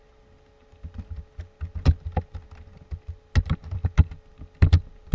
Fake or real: real